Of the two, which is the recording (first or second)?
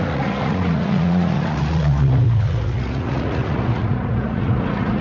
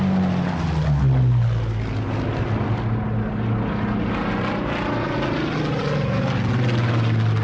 second